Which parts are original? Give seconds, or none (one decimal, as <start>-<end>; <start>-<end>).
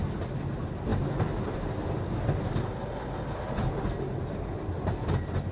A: 0.0-5.5